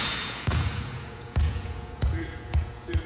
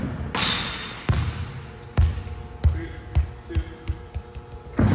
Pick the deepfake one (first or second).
first